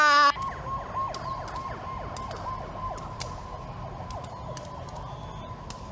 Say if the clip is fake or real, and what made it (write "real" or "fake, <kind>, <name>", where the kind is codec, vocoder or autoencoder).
real